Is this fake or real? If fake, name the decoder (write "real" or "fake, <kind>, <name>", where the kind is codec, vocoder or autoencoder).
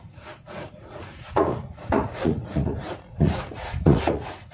fake, vocoder, Vocos